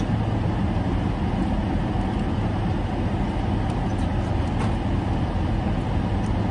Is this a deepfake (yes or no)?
no